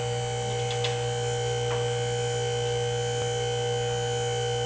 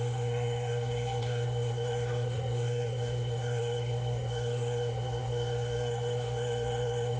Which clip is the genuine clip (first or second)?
first